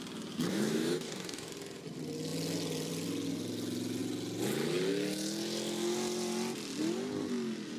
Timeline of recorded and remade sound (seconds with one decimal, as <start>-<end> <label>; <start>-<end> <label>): 0.0-0.5 recorded; 0.5-1.5 remade; 1.5-7.8 recorded